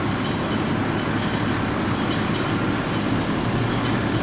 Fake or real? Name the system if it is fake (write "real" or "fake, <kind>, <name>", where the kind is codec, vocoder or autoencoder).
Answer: real